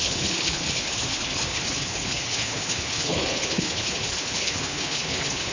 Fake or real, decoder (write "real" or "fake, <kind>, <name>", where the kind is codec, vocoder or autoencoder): fake, codec, HILCodec